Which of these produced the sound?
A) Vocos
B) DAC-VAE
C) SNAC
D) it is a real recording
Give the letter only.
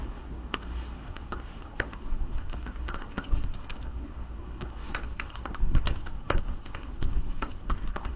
C